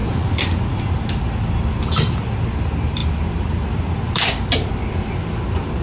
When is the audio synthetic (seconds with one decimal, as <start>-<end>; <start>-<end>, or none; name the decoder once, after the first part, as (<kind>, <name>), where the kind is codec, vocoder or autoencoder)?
none